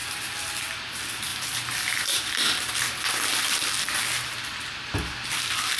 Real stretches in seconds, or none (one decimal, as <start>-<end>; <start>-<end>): 0.0-1.3; 2.7-5.8